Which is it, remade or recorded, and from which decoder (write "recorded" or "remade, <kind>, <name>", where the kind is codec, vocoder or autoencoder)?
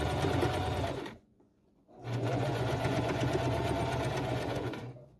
remade, vocoder, Vocos